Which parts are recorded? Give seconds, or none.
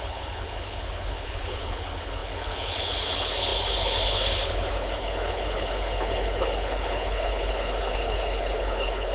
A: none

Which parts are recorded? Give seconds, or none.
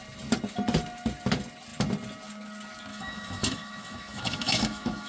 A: 0.0-2.9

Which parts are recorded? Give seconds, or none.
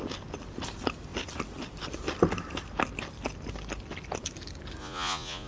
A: 0.0-4.8